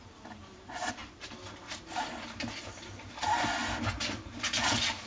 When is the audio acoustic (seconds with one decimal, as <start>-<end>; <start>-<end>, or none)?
0.0-5.1